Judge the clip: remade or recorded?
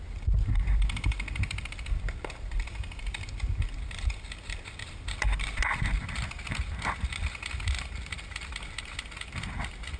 recorded